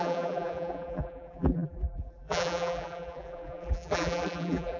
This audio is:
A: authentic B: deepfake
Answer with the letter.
B